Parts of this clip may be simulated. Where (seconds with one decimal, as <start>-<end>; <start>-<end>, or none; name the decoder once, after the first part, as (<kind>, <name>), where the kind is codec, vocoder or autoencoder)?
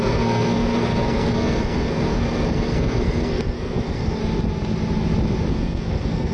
0.0-4.2 (codec, SNAC); 5.5-6.3